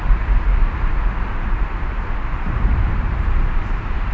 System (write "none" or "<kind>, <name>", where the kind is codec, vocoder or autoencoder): vocoder, BigVGAN v2